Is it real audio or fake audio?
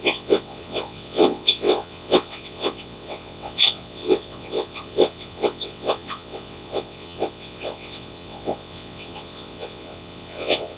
fake